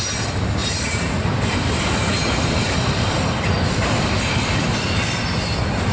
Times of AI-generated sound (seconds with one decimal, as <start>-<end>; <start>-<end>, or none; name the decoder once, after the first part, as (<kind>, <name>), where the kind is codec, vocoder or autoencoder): 0.6-4.1 (vocoder, BigVGAN v2)